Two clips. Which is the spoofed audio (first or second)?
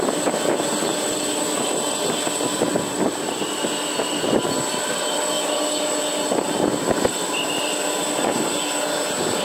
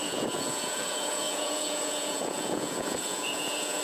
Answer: second